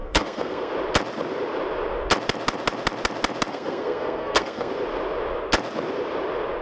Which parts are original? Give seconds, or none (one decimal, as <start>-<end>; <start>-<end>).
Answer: 0.7-3.5; 4.7-6.6